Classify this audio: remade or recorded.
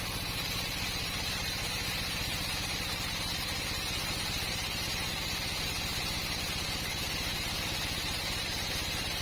remade